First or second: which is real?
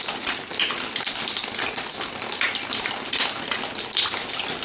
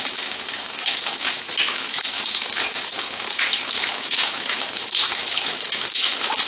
first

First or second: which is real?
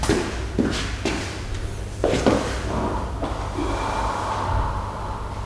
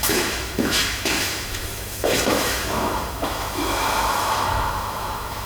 first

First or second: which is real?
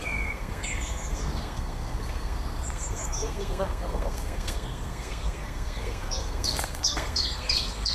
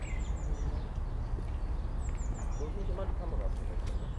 second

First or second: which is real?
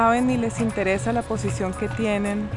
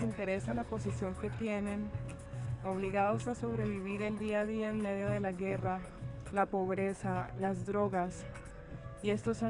first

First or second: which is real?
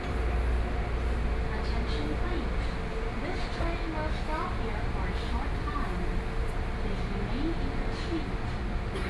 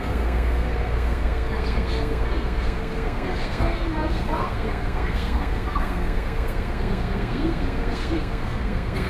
first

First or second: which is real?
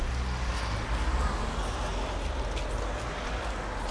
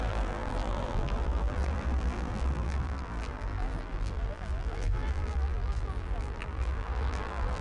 first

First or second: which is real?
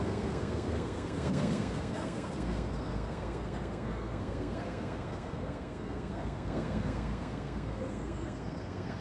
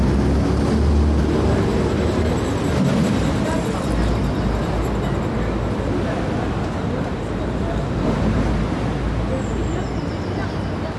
second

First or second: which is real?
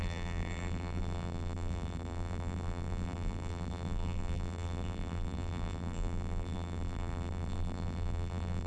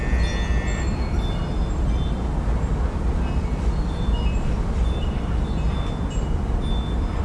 second